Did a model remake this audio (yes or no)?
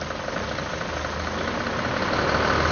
no